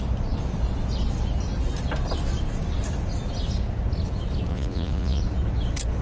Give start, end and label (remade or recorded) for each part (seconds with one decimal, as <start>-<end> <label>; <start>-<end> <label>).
0.0-4.5 recorded; 4.5-5.2 remade; 5.2-6.0 recorded

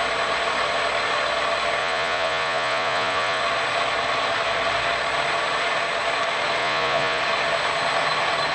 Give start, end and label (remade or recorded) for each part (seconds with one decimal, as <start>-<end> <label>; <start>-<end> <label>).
0.0-1.8 recorded; 1.8-3.4 remade; 3.4-6.6 recorded; 6.6-7.2 remade; 7.2-8.5 recorded